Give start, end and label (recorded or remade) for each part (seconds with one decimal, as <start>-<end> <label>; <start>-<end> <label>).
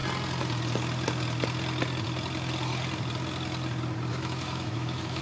0.0-4.1 recorded; 4.1-5.2 remade